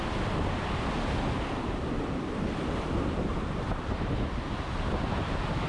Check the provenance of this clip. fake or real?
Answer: real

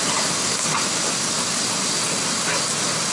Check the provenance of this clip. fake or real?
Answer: real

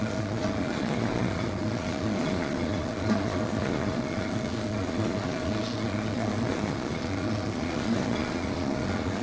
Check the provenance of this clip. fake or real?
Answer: fake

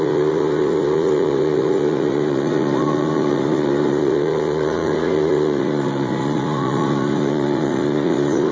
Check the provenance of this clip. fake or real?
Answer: fake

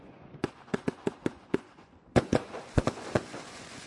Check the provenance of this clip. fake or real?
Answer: fake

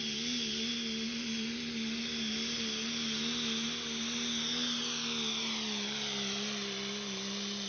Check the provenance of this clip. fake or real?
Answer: real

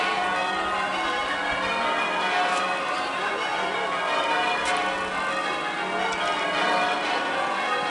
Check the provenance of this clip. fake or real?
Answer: real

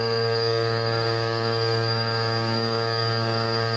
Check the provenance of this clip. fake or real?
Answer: fake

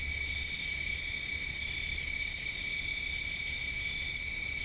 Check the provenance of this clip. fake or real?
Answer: real